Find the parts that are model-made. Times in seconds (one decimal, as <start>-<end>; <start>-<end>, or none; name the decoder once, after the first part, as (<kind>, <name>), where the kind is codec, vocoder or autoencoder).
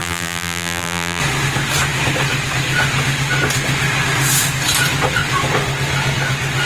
0.0-1.2 (vocoder, BigVGAN v2)